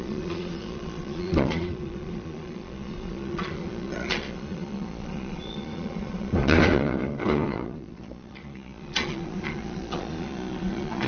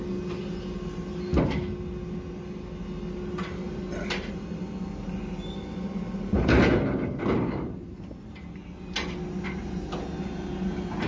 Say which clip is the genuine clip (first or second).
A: second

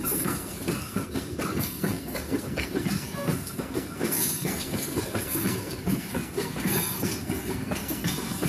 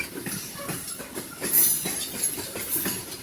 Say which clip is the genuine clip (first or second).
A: second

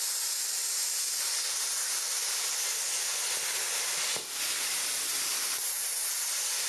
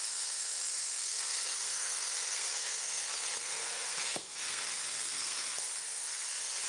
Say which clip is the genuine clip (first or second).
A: first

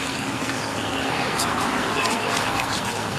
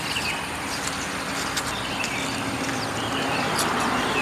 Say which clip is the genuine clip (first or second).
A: second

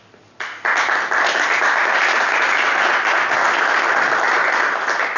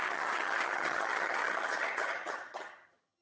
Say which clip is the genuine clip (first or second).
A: first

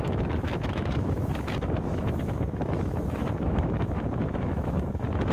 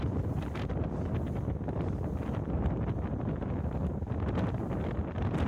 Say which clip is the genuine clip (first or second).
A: second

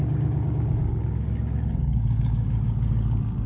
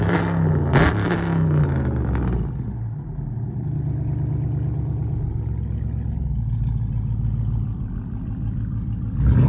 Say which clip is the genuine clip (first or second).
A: second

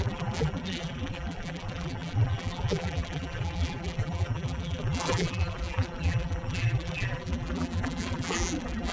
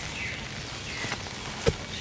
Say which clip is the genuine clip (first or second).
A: second